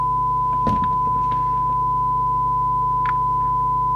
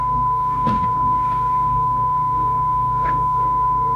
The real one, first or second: first